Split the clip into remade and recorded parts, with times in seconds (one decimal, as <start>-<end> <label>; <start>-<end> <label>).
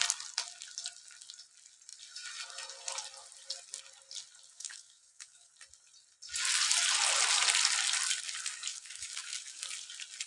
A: 0.0-4.5 recorded; 4.5-5.5 remade; 5.5-8.7 recorded; 8.7-9.6 remade; 9.6-10.3 recorded